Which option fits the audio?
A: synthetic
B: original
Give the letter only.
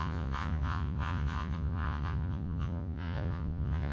A